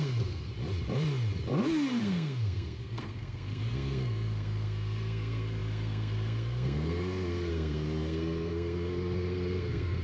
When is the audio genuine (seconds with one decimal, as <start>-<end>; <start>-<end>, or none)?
0.5-2.0